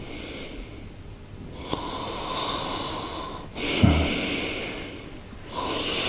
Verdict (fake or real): real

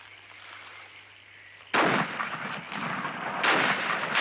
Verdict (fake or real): real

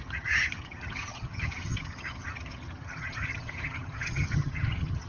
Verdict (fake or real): fake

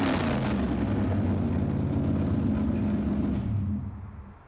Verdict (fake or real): real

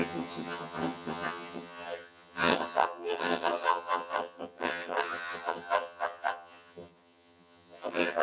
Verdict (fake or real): fake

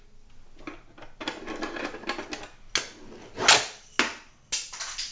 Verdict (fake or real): real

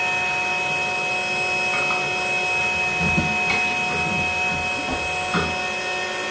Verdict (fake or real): real